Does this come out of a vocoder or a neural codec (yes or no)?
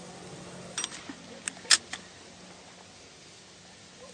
no